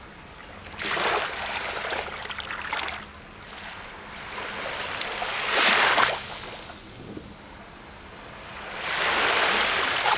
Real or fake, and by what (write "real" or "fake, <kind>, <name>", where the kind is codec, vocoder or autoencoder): real